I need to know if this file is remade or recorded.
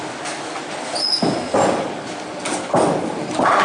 recorded